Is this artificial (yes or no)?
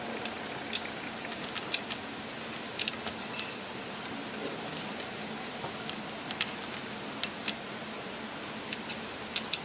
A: no